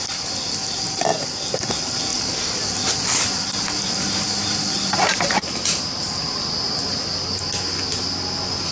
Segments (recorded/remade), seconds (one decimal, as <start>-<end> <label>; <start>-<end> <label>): 0.0-8.7 recorded